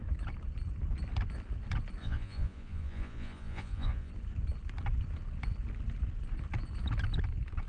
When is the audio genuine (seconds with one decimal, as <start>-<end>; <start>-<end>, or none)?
0.0-2.0; 4.1-7.7